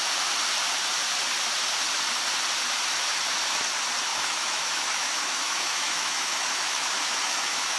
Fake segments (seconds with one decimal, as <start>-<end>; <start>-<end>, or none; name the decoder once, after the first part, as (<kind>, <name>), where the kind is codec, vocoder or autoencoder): 4.1-7.8 (autoencoder, DAC-VAE)